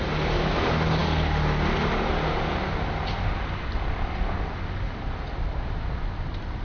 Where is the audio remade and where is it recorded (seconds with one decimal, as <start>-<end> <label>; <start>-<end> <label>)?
0.0-6.6 recorded